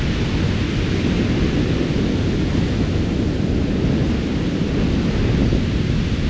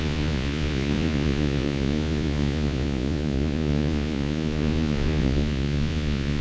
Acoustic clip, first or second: first